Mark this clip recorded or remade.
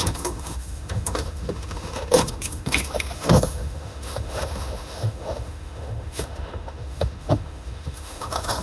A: remade